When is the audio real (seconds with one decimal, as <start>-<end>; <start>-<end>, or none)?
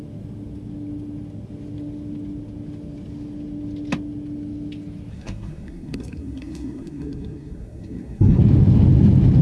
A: 0.0-5.1; 8.4-9.4